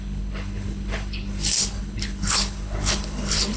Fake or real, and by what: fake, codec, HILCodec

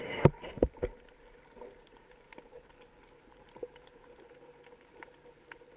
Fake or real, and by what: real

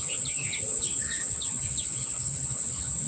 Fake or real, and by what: fake, codec, HILCodec